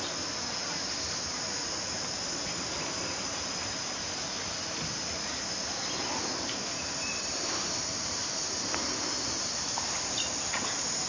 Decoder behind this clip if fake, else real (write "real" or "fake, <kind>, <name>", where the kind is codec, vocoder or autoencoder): real